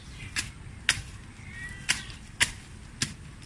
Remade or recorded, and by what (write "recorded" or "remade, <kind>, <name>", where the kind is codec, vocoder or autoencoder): recorded